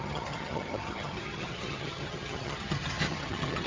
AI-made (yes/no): yes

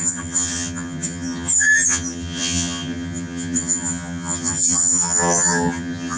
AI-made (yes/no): yes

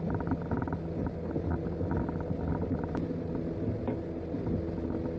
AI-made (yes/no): no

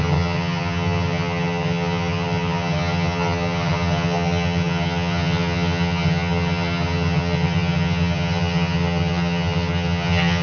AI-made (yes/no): yes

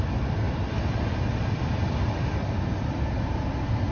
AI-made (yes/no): no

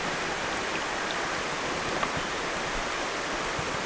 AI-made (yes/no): no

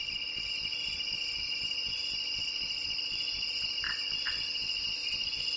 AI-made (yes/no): no